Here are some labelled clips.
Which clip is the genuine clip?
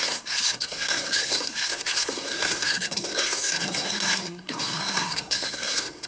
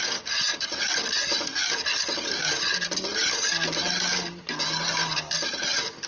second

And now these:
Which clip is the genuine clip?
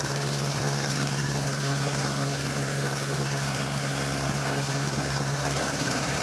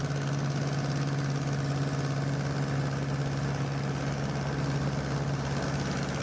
second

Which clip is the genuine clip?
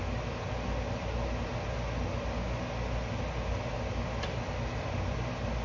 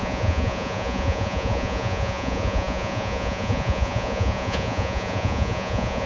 first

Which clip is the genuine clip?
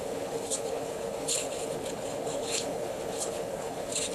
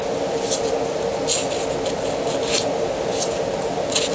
second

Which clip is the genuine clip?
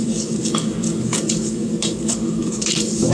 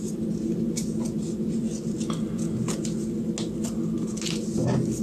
second